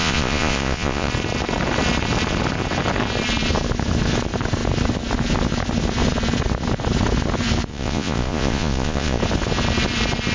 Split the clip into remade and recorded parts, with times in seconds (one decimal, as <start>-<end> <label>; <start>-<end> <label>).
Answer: 0.0-1.1 remade; 1.1-7.7 recorded; 7.7-9.2 remade; 9.2-10.3 recorded